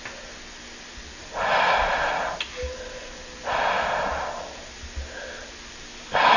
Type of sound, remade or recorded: recorded